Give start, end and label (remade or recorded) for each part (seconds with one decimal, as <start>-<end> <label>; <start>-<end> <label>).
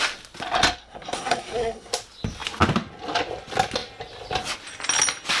0.0-0.8 recorded; 0.8-1.9 remade; 1.9-5.4 recorded